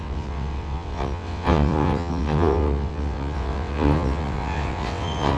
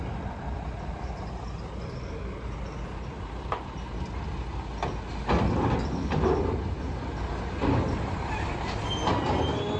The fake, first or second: first